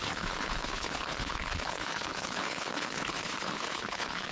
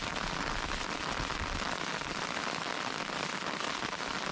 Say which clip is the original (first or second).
second